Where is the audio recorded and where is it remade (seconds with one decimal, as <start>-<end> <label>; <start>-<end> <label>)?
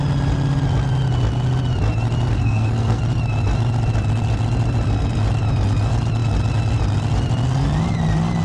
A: 0.0-2.3 recorded; 2.3-3.0 remade; 3.0-8.4 recorded